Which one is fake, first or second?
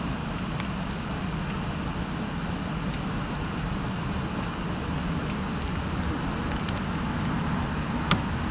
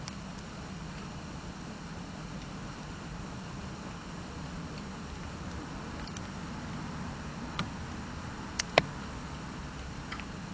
second